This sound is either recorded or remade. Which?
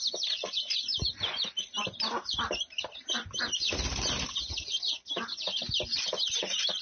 recorded